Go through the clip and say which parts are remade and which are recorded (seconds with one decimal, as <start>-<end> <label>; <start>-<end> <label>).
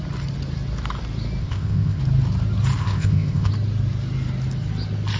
0.0-1.4 recorded; 1.4-2.0 remade; 2.0-2.8 recorded; 2.8-3.5 remade; 3.5-5.2 recorded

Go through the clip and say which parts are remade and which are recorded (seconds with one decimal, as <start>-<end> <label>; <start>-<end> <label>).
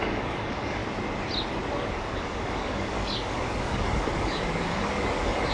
0.0-0.8 remade; 0.8-1.9 recorded; 1.9-5.5 remade